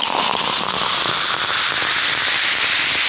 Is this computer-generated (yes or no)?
no